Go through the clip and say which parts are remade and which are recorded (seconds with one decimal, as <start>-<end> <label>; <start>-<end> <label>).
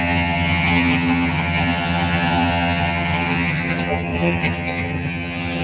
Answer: 0.0-5.6 remade